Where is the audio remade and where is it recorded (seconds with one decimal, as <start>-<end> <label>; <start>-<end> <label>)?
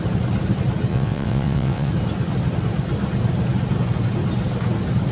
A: 0.0-0.9 recorded; 0.9-1.9 remade; 1.9-5.1 recorded